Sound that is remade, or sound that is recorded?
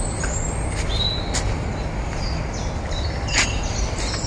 recorded